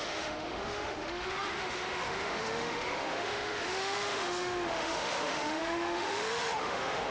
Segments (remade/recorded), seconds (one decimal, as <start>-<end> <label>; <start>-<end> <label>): 0.0-7.1 remade